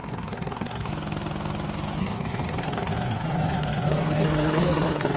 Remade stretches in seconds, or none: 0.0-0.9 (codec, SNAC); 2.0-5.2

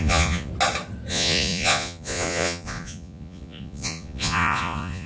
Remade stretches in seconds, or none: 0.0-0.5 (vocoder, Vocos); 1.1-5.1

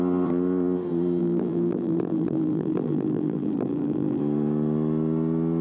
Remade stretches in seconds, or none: 1.2-4.2 (vocoder, BigVGAN v2)

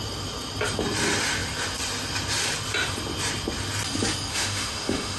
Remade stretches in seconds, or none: 4.3-5.2 (autoencoder, DAC-VAE)

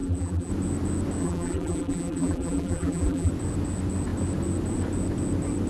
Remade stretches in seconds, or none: 0.0-0.5 (vocoder, BigVGAN v2); 1.2-3.3

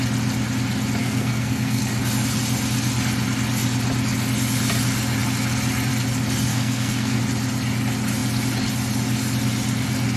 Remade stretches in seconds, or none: 1.0-1.8 (codec, SNAC); 6.5-7.2

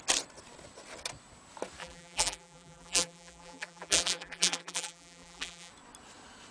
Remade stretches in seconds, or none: 1.8-5.7 (vocoder, BigVGAN v2)

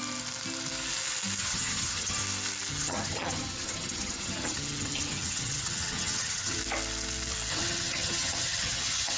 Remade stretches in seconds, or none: 1.4-2.2 (vocoder, HiFi-GAN); 2.7-6.6; 7.5-9.2